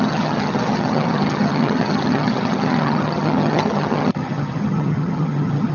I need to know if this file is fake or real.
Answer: fake